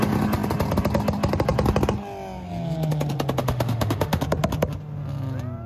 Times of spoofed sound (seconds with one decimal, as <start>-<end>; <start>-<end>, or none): 3.4-4.2